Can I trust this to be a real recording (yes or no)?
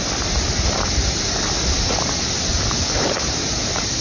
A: yes